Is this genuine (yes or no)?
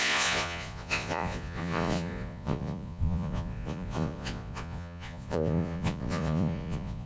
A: no